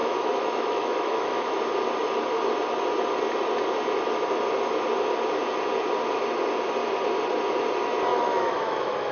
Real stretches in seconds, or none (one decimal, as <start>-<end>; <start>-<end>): 1.6-8.1